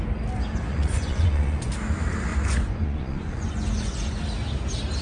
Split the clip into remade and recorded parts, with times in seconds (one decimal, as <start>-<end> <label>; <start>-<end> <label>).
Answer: 0.0-0.7 recorded; 0.7-1.7 remade; 1.7-2.3 recorded; 2.3-4.2 remade; 4.2-5.0 recorded

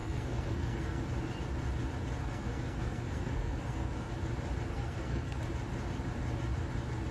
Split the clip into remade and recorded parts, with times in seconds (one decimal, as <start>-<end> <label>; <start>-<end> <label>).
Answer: 0.0-1.0 remade; 1.0-2.2 recorded; 2.2-4.1 remade; 4.1-4.7 recorded; 4.7-5.4 remade; 5.4-7.1 recorded

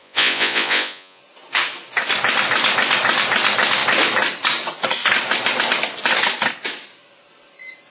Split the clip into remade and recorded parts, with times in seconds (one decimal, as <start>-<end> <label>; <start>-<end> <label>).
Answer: 0.0-1.2 remade; 1.2-7.9 recorded

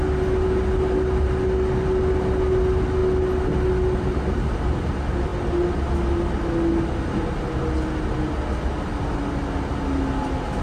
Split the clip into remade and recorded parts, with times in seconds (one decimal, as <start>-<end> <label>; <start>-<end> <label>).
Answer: 0.0-10.6 recorded

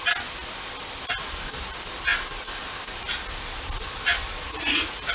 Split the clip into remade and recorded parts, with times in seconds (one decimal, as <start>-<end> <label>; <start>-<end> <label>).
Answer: 0.0-5.1 recorded

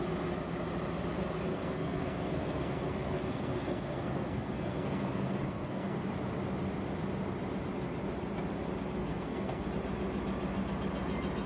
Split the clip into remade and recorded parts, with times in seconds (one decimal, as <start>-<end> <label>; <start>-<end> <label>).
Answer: 0.0-1.5 recorded; 1.5-6.0 remade; 6.0-9.0 recorded; 9.0-9.7 remade; 9.7-11.5 recorded